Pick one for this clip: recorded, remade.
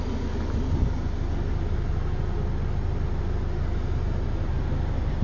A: recorded